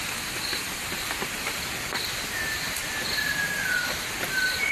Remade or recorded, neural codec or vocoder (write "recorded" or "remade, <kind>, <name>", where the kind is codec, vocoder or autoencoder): recorded